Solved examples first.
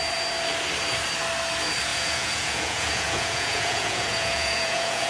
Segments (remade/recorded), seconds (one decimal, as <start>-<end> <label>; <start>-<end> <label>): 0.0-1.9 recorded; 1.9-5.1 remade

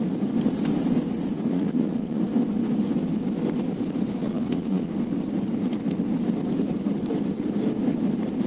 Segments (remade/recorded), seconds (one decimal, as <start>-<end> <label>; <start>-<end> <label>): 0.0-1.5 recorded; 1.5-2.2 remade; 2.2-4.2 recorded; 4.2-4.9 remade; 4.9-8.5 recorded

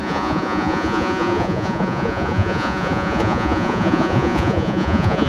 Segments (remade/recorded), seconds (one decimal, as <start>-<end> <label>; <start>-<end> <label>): 0.0-5.3 remade